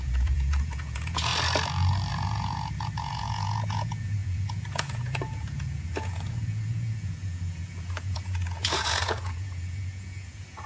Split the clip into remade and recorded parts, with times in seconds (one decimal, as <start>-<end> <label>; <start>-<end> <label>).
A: 0.0-1.3 remade; 1.3-2.1 recorded; 2.1-10.7 remade